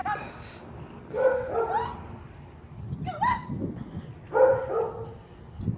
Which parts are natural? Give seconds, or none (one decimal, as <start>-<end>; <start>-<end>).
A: 0.0-5.8